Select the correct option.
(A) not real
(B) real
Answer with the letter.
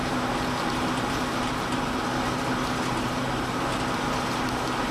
B